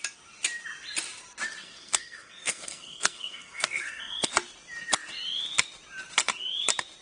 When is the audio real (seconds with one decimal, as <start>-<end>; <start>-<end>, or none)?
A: 0.0-1.6; 4.3-7.0